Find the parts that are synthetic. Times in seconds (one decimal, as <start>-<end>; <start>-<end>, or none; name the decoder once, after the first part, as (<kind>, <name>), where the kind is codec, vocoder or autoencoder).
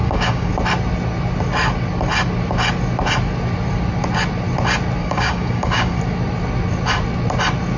0.0-0.5 (codec, DAC); 5.0-6.0